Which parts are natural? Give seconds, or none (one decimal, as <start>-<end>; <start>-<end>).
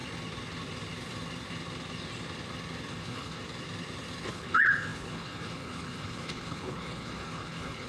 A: 0.0-2.9; 3.4-4.3